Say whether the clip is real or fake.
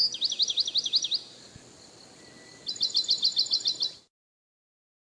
real